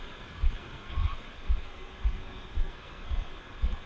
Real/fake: fake